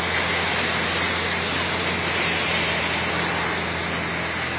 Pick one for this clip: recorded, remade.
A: recorded